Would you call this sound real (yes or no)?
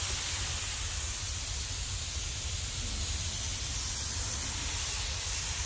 no